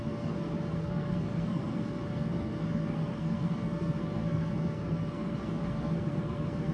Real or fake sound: fake